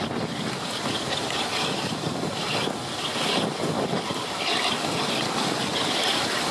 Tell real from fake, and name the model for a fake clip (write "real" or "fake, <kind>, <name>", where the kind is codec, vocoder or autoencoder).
real